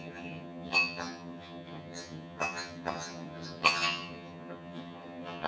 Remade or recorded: remade